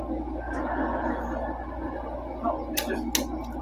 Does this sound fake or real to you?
real